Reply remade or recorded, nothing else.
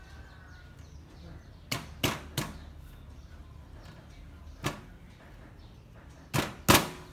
recorded